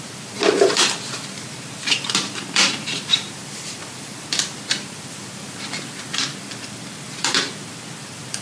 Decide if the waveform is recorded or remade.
remade